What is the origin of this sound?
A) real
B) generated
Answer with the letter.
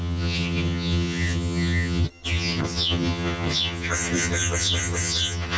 B